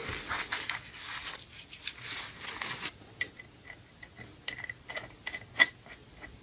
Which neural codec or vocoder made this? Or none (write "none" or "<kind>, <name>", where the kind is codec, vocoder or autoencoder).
none